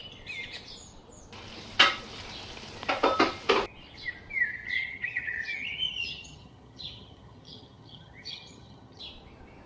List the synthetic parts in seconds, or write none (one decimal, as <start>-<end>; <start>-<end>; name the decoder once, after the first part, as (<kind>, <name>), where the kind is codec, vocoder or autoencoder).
4.5-9.0 (vocoder, HiFi-GAN)